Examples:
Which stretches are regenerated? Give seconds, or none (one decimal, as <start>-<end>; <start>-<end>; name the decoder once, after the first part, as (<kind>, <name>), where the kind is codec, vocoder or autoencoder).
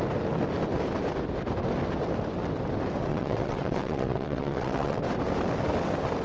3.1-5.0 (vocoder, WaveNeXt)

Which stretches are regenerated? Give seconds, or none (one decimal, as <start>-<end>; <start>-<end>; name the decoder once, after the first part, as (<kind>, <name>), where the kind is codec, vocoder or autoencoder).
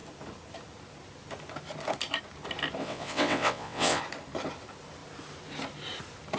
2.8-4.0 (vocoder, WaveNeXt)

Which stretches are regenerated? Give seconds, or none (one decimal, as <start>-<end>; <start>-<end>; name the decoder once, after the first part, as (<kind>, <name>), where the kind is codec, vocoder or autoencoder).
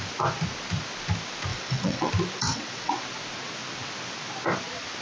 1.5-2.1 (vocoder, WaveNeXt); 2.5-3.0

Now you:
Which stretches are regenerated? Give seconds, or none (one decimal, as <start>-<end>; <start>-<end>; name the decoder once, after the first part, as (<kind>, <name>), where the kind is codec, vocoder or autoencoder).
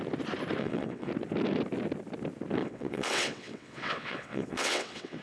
0.6-1.1 (vocoder, WaveNeXt); 2.6-5.2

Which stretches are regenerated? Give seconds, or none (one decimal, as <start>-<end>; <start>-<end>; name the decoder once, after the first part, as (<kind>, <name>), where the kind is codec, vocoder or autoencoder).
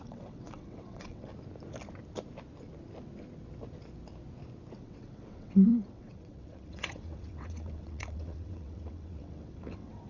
0.0-1.3 (vocoder, WaveNeXt); 4.7-10.1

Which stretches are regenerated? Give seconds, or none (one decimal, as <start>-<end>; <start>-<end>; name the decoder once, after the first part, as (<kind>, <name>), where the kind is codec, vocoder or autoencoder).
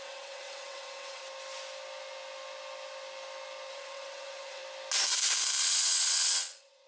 0.0-1.2 (vocoder, WaveNeXt); 3.7-4.6; 5.6-6.9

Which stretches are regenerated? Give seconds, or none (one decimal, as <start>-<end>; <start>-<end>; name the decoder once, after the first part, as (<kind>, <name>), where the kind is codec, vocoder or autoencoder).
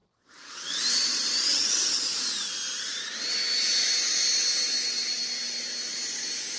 0.0-0.8 (vocoder, WaveNeXt); 1.5-2.3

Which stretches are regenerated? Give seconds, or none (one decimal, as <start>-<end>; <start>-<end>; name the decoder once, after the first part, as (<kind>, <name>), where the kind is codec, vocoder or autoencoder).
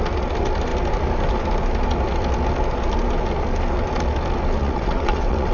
4.6-5.5 (vocoder, WaveNeXt)